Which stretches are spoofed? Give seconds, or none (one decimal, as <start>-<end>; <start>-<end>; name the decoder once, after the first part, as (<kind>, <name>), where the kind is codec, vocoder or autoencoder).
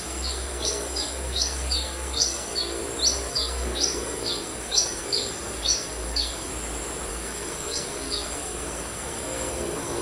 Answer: 0.0-2.8 (codec, SNAC); 3.3-6.5; 7.1-10.0